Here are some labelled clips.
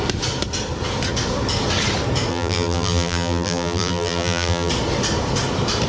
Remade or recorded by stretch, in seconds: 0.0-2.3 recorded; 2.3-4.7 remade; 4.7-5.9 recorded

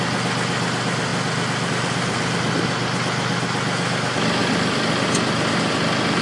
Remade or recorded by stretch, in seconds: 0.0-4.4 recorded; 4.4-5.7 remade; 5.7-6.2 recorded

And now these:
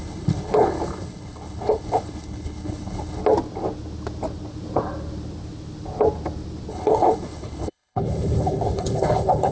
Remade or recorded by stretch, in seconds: 0.0-3.2 remade; 3.2-6.7 recorded; 6.7-9.5 remade

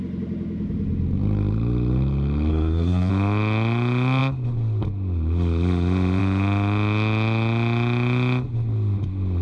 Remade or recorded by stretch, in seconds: 0.0-2.5 recorded; 2.5-3.1 remade; 3.1-9.4 recorded